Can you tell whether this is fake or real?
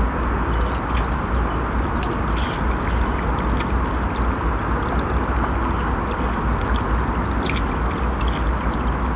real